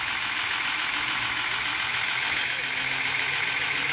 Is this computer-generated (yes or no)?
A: yes